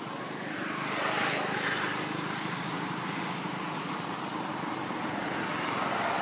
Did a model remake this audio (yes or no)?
no